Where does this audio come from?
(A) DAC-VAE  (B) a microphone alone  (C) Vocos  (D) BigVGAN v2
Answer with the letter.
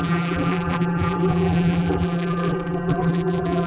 D